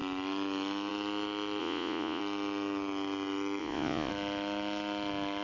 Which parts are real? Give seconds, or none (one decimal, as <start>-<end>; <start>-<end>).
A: 0.0-1.6; 2.2-3.6; 4.1-5.4

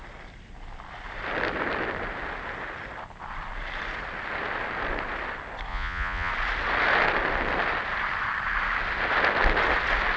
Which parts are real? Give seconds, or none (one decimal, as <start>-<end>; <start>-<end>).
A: 0.0-5.7; 6.3-10.2